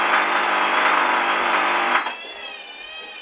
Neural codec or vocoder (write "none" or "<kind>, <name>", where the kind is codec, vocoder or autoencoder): none